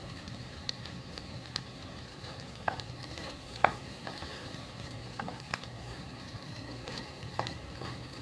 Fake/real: fake